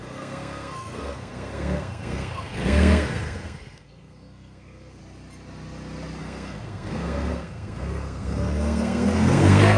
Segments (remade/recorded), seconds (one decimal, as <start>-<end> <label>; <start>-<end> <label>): 0.0-5.0 remade; 5.0-6.2 recorded; 6.2-9.8 remade